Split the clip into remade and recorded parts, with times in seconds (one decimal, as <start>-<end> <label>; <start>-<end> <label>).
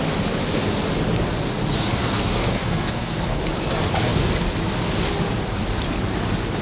0.0-2.0 recorded; 2.0-3.4 remade; 3.4-6.6 recorded